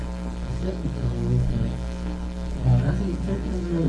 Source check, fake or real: fake